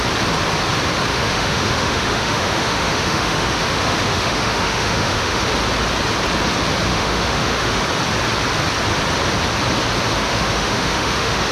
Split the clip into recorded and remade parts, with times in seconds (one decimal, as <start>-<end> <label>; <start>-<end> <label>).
0.0-1.1 recorded; 1.1-5.4 remade; 5.4-6.9 recorded; 6.9-7.8 remade; 7.8-10.3 recorded; 10.3-11.5 remade